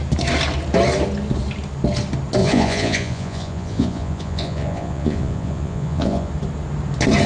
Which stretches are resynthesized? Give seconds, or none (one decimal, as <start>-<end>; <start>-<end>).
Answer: 2.4-6.3